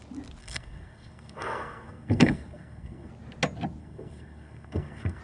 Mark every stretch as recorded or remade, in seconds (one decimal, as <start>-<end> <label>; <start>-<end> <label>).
0.0-0.4 recorded; 0.4-3.1 remade; 3.1-3.8 recorded; 3.8-5.2 remade